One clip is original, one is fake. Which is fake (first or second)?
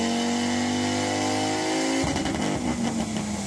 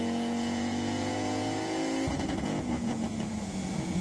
second